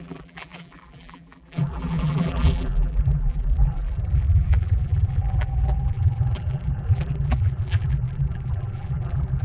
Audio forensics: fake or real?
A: fake